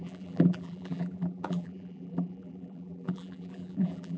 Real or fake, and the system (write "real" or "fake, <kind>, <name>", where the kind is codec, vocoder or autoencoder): fake, vocoder, BigVGAN v2